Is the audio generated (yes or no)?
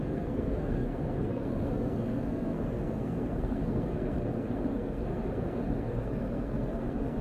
yes